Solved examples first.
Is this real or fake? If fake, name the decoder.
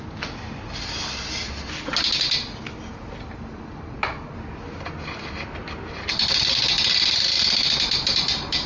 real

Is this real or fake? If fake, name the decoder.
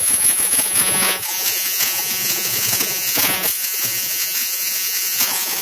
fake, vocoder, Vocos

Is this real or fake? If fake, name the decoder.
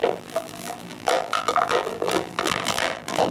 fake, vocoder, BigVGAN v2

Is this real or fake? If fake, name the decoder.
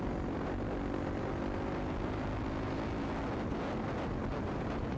real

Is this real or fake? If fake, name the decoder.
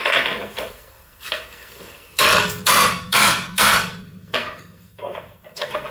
fake, codec, SNAC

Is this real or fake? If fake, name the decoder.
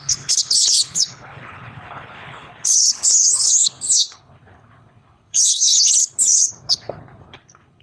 fake, codec, HILCodec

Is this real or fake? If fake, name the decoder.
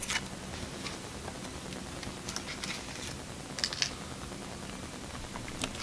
real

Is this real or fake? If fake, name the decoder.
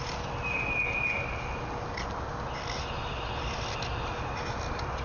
real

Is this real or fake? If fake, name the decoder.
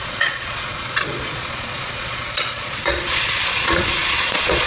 fake, vocoder, Vocos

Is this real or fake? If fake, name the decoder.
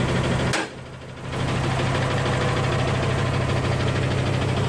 real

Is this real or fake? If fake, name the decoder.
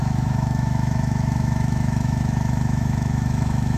fake, autoencoder, DAC-VAE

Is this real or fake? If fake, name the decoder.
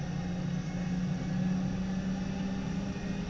real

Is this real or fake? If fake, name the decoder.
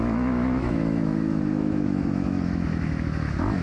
fake, autoencoder, DAC-VAE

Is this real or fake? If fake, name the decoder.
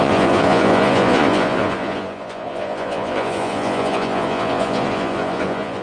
fake, vocoder, Vocos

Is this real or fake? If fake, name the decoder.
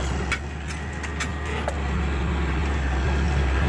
real